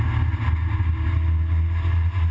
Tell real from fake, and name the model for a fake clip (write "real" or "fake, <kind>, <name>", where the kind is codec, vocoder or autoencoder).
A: real